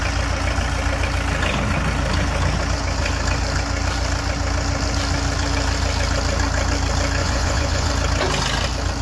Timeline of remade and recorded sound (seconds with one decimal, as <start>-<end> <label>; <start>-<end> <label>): 0.0-7.2 recorded; 7.2-7.9 remade; 7.9-9.0 recorded